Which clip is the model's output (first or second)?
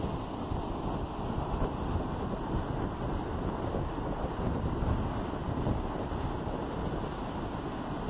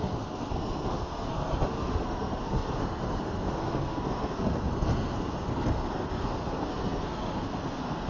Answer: second